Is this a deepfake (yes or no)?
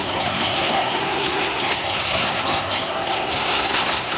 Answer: yes